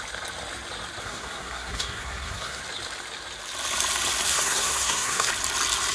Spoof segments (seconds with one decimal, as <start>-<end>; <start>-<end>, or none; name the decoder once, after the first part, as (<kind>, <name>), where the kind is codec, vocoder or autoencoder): 1.0-2.6 (codec, SNAC); 4.3-5.3